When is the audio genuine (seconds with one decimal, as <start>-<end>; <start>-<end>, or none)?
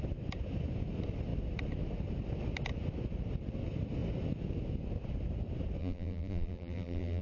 0.0-5.8